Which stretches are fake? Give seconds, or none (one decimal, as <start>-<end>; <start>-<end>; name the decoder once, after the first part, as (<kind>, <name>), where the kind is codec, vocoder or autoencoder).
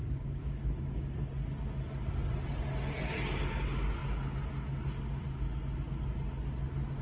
0.0-1.1 (codec, DAC)